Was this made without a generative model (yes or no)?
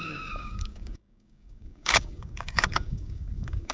no